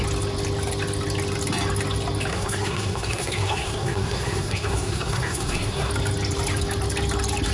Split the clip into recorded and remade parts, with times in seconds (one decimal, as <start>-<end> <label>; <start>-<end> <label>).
0.0-2.3 recorded; 2.3-5.9 remade; 5.9-7.5 recorded